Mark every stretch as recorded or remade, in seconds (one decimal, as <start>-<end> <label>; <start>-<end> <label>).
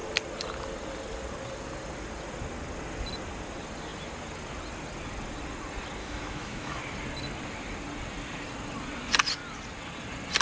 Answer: 0.0-6.0 recorded; 6.0-6.8 remade; 6.8-10.4 recorded